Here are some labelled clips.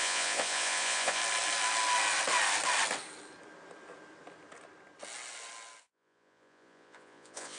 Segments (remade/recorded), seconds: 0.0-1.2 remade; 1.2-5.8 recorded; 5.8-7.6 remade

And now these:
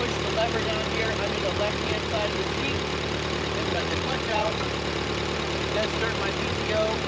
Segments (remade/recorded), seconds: 0.0-3.7 recorded; 3.7-4.5 remade; 4.5-7.1 recorded

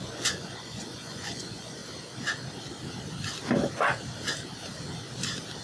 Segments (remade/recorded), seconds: 0.0-1.8 remade; 1.8-5.6 recorded